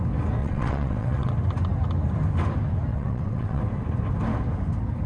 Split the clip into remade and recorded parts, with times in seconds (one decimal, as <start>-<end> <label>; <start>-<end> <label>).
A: 0.0-0.4 recorded; 0.4-1.3 remade; 1.3-2.9 recorded; 2.9-3.6 remade; 3.6-5.1 recorded